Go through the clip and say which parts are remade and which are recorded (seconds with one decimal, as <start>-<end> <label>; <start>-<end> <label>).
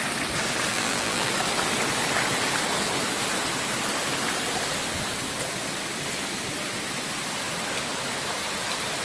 0.0-0.7 recorded; 0.7-1.3 remade; 1.3-9.0 recorded